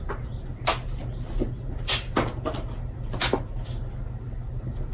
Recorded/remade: recorded